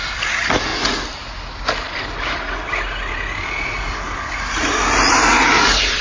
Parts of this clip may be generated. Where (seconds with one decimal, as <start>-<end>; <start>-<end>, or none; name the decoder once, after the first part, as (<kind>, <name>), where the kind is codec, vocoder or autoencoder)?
none